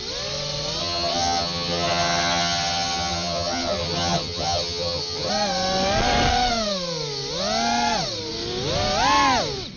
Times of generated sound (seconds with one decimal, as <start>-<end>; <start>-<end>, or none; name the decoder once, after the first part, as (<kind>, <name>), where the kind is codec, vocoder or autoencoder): 0.8-5.3 (vocoder, HiFi-GAN)